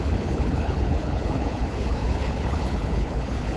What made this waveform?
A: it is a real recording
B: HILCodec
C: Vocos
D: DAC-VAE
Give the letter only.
B